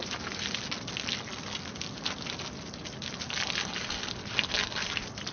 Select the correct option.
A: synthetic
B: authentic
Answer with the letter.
B